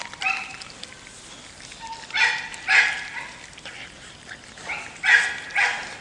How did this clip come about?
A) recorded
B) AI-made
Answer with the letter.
A